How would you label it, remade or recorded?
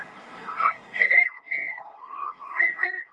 remade